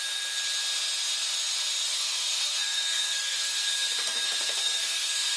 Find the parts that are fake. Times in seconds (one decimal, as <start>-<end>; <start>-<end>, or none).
1.9-5.4